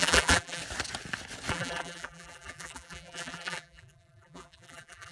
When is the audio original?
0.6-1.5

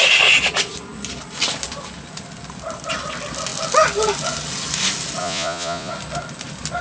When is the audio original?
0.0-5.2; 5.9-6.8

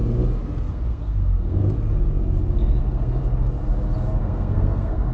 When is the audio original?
0.0-0.7; 1.6-2.8; 3.2-4.2

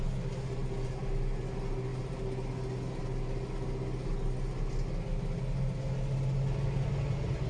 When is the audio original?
0.0-7.5

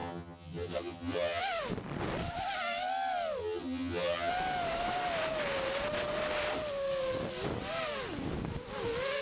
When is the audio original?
1.4-3.4; 4.3-9.2